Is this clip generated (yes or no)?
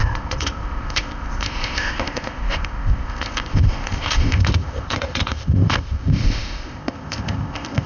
yes